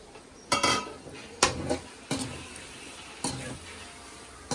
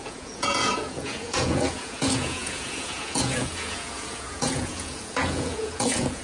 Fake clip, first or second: second